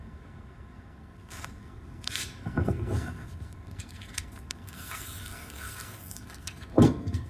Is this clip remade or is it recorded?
remade